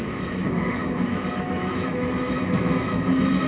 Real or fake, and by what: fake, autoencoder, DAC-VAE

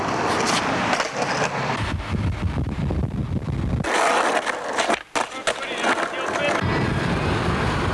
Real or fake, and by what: real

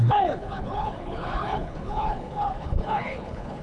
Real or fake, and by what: fake, codec, HILCodec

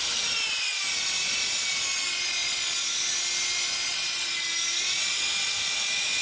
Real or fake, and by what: real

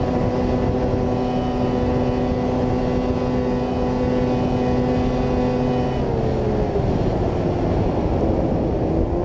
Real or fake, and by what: real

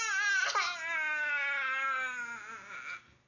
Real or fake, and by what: real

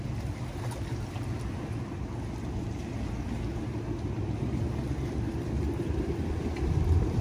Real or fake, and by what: real